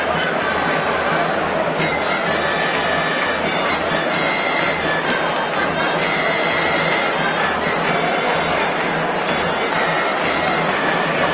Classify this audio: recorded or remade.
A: recorded